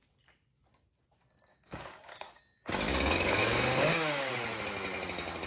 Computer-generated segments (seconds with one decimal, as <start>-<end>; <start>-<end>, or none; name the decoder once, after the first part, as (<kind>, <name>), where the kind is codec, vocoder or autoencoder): 1.5-2.4 (codec, DAC); 2.9-4.3